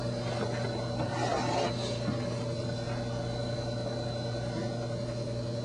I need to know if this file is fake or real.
real